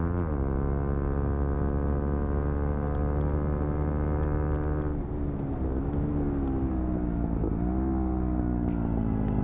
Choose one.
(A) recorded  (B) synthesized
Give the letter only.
A